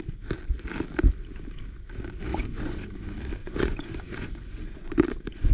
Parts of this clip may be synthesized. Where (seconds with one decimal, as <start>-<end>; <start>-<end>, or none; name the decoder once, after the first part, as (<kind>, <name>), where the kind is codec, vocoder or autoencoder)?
2.3-2.9 (vocoder, Vocos); 3.4-5.5